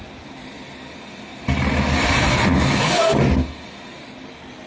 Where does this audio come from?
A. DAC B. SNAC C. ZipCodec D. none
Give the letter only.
D